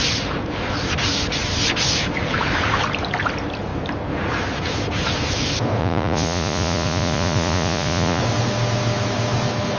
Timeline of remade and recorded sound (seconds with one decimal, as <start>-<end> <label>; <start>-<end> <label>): 0.0-5.8 recorded; 5.8-8.2 remade; 8.2-9.8 recorded